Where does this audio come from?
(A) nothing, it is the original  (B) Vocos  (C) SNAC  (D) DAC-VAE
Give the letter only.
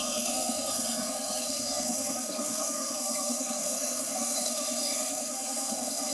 C